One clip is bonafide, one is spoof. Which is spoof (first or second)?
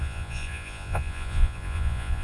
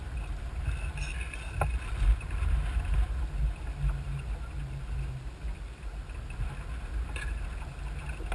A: first